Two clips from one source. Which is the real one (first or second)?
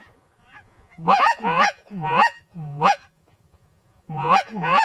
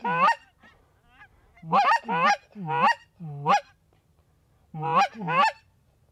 second